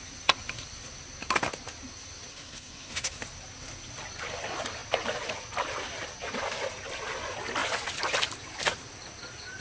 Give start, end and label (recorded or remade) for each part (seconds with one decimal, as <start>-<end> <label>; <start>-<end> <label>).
0.0-2.3 recorded; 2.3-3.2 remade; 3.2-9.6 recorded